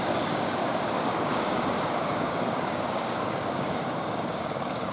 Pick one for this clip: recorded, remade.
remade